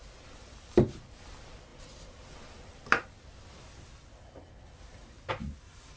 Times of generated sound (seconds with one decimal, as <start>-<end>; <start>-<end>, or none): 1.7-5.3

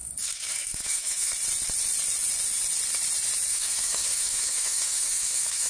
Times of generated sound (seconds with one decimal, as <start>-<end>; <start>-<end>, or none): 0.0-1.3; 3.5-5.7

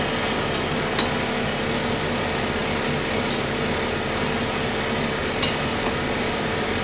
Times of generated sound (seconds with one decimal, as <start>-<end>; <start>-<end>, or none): 5.2-6.8

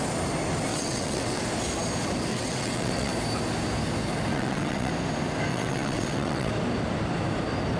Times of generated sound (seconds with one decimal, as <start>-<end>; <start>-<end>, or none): 0.7-1.4; 2.3-3.1; 4.3-4.9; 5.5-6.5

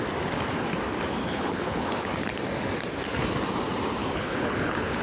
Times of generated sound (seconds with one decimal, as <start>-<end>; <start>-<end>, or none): 1.2-2.1; 4.0-5.0